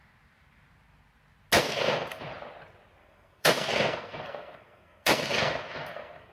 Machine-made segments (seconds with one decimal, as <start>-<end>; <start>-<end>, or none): 1.6-2.2; 3.0-6.3